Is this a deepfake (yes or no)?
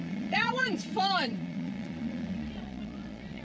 yes